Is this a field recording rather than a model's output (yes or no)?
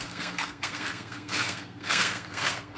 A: no